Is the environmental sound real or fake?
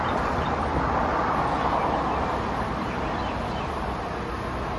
real